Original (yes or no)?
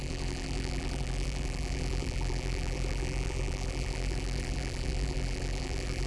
no